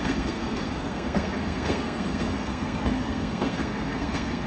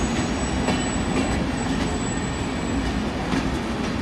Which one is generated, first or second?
first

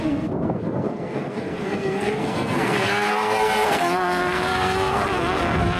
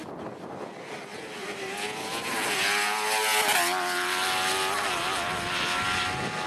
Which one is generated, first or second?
first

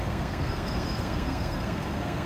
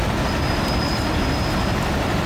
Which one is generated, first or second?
first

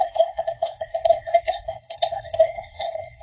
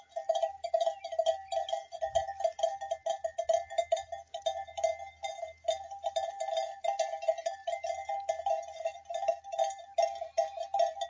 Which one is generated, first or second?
first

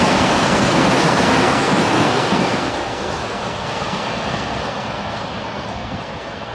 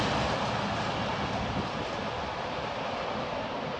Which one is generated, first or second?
first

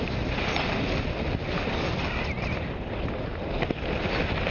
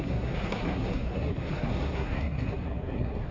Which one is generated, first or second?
second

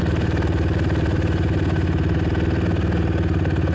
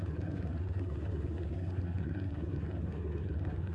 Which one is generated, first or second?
second